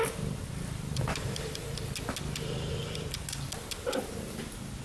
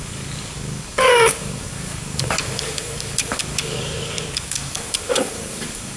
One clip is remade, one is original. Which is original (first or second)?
first